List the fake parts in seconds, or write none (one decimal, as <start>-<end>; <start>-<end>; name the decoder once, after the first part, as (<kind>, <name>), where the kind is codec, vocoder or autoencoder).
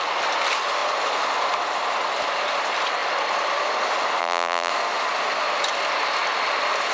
4.2-4.7 (vocoder, BigVGAN v2)